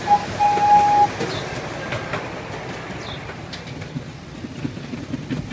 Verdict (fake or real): real